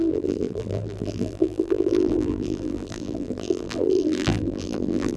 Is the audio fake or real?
fake